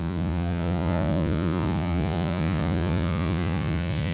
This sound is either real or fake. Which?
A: fake